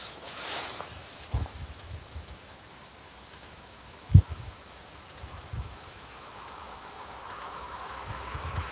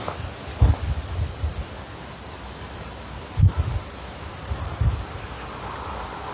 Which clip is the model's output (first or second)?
first